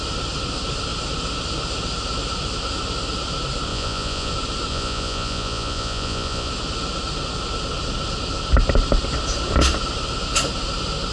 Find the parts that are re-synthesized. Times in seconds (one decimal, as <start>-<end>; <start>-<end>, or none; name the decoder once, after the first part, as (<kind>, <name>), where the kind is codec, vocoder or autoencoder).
3.7-4.3 (vocoder, Vocos); 4.7-6.5